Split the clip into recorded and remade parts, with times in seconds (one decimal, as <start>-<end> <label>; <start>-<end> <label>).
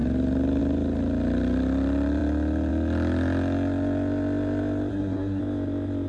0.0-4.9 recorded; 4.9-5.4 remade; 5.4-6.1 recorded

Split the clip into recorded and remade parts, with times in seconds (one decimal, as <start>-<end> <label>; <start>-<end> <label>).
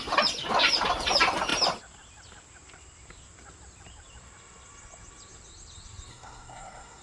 0.0-6.1 recorded; 6.1-7.0 remade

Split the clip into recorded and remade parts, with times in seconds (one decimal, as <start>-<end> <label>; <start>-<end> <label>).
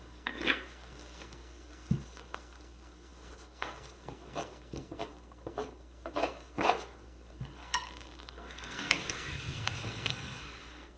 0.0-11.0 remade